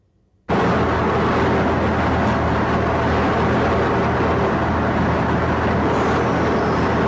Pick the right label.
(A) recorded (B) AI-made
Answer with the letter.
A